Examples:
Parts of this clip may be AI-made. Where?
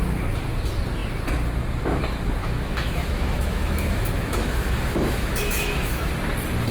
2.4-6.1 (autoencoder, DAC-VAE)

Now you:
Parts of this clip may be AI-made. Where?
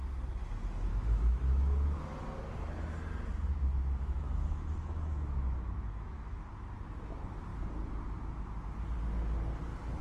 0.9-2.0 (autoencoder, DAC-VAE); 3.7-6.5